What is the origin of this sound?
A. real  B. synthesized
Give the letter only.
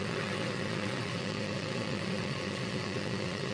B